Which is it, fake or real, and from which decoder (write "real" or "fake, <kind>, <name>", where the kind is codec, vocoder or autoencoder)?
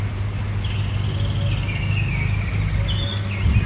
real